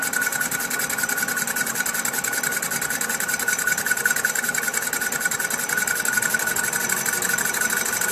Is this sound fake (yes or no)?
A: no